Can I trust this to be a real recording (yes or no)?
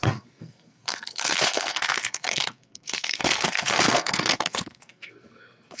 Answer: no